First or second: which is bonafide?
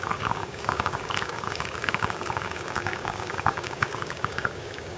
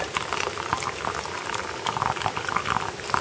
second